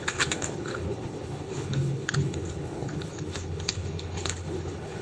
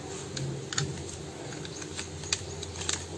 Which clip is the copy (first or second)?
first